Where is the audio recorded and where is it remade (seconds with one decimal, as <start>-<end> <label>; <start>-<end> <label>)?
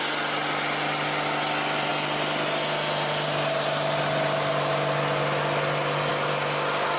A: 0.0-7.0 recorded